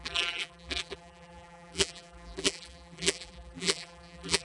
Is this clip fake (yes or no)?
yes